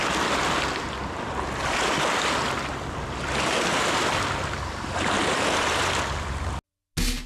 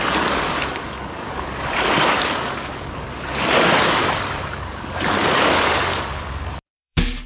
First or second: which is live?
first